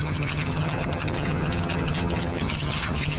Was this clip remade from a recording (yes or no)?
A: yes